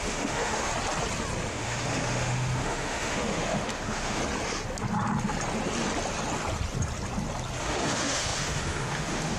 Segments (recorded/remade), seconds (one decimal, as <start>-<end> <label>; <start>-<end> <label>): 0.0-0.7 remade; 0.7-1.5 recorded; 1.5-4.2 remade; 4.2-7.6 recorded; 7.6-9.4 remade